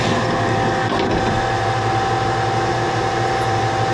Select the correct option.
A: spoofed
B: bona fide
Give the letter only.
B